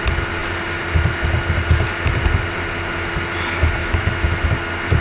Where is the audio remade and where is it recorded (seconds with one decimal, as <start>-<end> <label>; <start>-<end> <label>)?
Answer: 0.0-3.8 recorded; 3.8-4.4 remade; 4.4-5.0 recorded